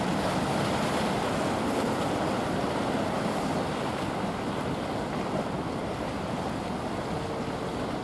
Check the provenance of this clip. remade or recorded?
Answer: recorded